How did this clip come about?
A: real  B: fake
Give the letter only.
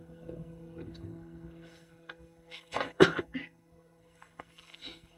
B